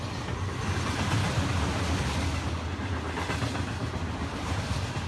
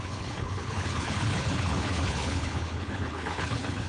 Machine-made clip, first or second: second